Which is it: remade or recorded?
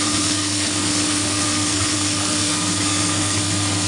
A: remade